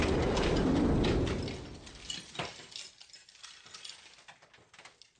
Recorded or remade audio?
recorded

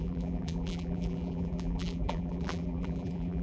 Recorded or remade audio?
remade